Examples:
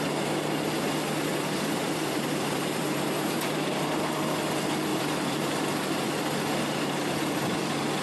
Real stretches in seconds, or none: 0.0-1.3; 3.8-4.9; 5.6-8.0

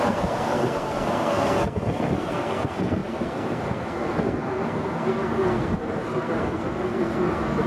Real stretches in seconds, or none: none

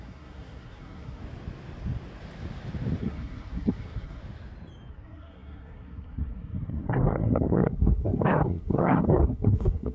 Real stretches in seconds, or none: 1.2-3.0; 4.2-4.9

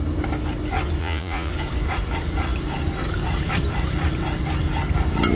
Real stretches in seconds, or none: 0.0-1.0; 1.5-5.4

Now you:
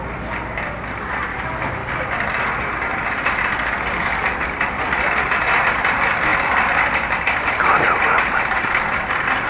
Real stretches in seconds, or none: 0.0-1.8; 5.2-6.3; 8.8-9.5